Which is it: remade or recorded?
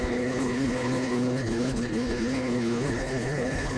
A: remade